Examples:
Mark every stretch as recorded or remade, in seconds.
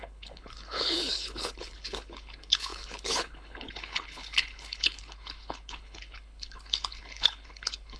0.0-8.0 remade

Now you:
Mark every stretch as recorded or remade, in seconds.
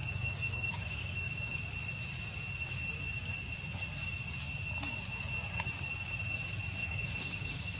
0.0-1.6 remade; 1.6-6.8 recorded; 6.8-7.8 remade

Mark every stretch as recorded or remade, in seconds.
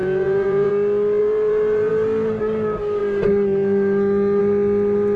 0.0-0.7 remade; 0.7-1.2 recorded; 1.2-1.9 remade; 1.9-5.2 recorded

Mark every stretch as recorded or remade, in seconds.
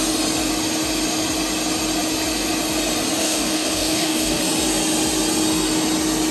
0.0-3.2 recorded; 3.2-4.4 remade; 4.4-6.3 recorded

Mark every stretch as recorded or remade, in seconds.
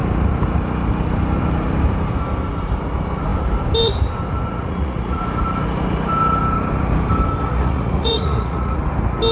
0.0-4.5 recorded; 4.5-5.2 remade; 5.2-7.5 recorded; 7.5-8.8 remade; 8.8-9.3 recorded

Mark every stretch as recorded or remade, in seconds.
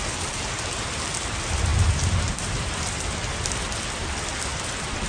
0.0-1.7 recorded; 1.7-2.8 remade; 2.8-5.1 recorded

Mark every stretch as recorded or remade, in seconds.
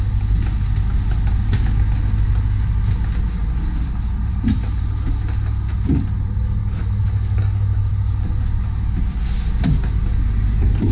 0.0-6.6 recorded; 6.6-7.9 remade; 7.9-10.9 recorded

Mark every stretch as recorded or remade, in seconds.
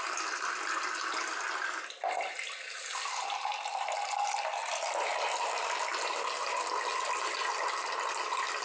0.0-8.6 recorded